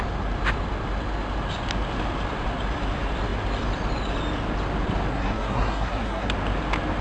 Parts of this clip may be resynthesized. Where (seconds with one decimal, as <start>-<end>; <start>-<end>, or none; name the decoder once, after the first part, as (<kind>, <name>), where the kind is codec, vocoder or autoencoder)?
5.1-6.3 (codec, SNAC)